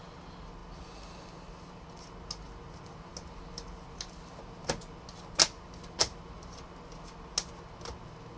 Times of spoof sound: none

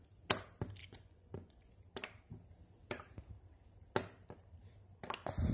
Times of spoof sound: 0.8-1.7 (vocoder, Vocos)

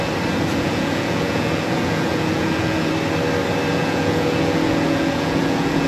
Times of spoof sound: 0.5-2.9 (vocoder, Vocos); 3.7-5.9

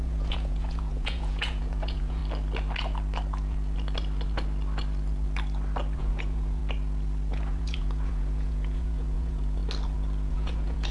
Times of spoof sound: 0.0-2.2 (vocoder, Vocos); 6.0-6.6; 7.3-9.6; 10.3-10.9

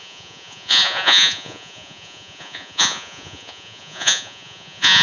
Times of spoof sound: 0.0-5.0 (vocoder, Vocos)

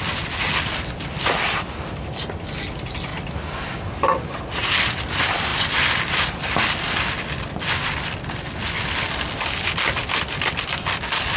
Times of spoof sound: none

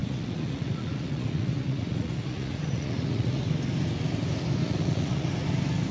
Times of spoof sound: 0.0-3.5 (vocoder, Vocos); 4.6-5.3